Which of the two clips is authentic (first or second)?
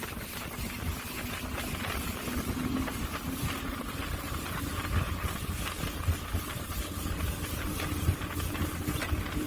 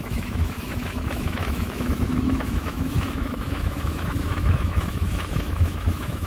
first